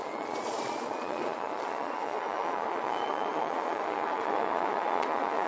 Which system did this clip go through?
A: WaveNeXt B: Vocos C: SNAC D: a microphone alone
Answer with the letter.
B